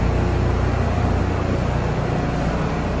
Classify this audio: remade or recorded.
recorded